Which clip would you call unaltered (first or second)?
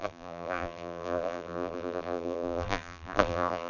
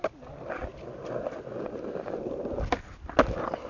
second